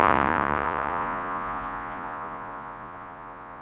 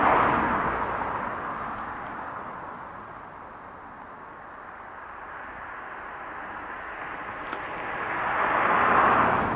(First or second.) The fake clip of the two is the first